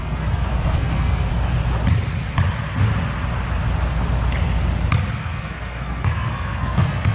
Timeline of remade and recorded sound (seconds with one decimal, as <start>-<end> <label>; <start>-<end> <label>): 0.0-1.3 remade; 1.3-5.2 recorded; 5.2-7.1 remade